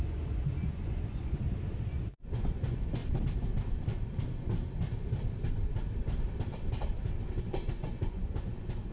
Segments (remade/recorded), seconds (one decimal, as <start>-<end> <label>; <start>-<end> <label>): 0.0-1.4 remade; 1.4-1.9 recorded; 1.9-3.0 remade; 3.0-7.4 recorded; 7.4-8.9 remade